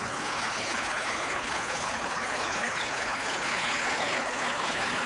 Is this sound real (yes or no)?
no